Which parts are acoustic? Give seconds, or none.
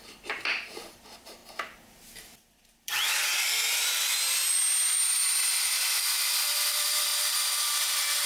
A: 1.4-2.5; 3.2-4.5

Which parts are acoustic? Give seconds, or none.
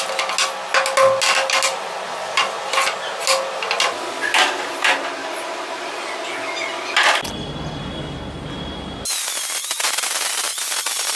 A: 0.0-5.2; 6.0-11.2